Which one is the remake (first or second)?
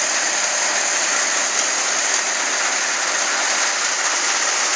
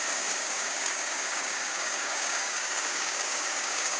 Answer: second